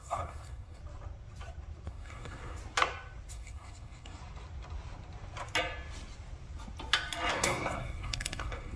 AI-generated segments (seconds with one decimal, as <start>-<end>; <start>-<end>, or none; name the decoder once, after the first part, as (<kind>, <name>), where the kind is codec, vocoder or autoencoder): 0.0-0.8 (codec, SNAC); 1.9-2.6; 3.3-4.2; 7.3-8.8